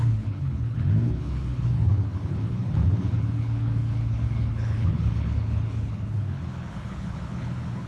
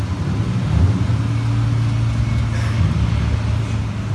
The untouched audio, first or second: second